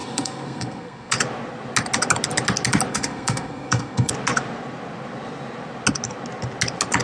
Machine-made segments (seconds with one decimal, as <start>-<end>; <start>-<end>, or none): 0.0-1.1; 2.9-4.1